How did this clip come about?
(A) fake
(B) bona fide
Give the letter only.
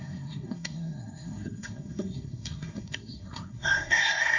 A